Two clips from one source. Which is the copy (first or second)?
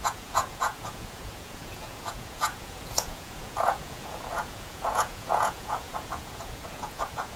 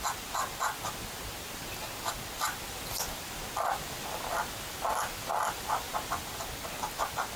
first